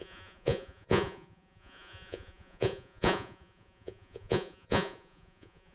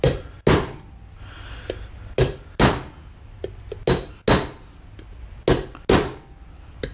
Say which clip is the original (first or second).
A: second